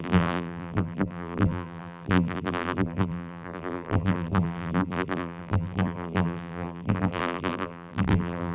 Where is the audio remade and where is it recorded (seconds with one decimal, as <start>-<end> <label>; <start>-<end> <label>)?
0.0-8.5 remade